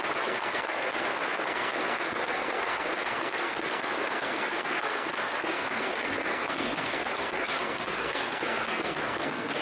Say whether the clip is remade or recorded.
remade